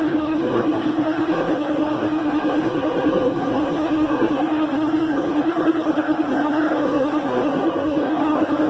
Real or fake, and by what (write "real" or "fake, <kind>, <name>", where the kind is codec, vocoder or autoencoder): fake, codec, SNAC